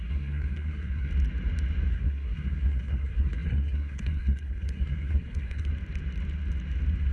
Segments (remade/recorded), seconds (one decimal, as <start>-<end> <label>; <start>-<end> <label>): 0.0-1.1 remade; 1.1-1.9 recorded; 1.9-5.7 remade; 5.7-7.1 recorded